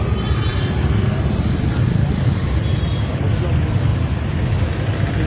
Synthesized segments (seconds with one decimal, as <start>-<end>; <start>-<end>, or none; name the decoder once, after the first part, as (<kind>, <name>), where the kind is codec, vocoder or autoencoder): 0.5-3.2 (vocoder, BigVGAN v2)

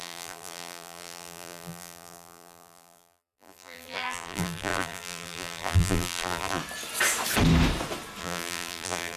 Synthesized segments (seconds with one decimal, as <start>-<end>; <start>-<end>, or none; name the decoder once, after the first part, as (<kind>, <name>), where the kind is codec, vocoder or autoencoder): 0.0-6.6 (vocoder, BigVGAN v2); 8.2-9.2

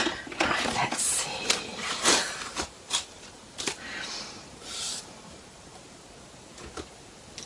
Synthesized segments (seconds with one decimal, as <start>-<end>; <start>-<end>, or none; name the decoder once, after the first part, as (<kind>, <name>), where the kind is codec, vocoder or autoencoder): 1.7-6.0 (vocoder, BigVGAN v2)